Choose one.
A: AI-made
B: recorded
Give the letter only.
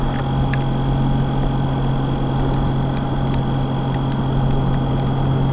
B